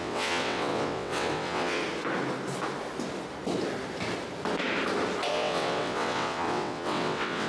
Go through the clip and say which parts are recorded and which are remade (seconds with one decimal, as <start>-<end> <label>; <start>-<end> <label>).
0.0-1.8 remade; 1.8-5.3 recorded; 5.3-7.5 remade